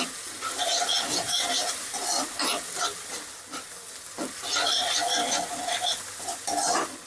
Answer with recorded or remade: recorded